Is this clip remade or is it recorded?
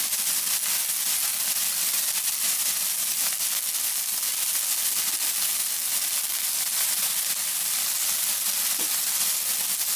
recorded